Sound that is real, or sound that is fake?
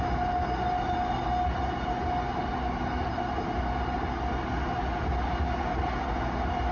real